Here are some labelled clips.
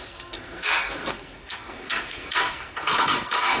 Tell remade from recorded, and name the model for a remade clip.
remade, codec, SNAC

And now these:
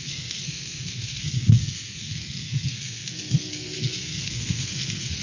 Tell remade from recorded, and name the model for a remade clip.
remade, codec, SNAC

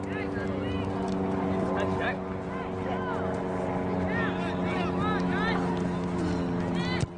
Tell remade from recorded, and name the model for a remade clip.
recorded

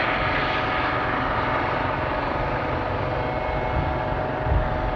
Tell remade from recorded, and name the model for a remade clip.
recorded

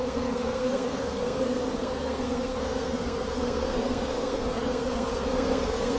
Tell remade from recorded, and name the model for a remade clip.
remade, codec, SNAC